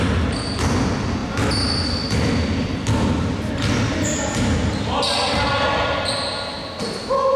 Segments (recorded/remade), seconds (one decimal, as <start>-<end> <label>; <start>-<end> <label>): 0.0-7.4 recorded